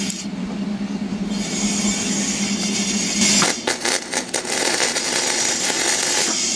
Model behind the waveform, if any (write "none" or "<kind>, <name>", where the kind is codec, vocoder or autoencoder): none